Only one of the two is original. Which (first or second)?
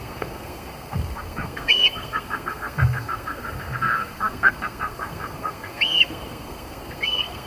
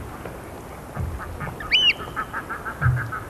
second